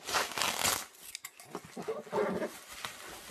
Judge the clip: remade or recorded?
recorded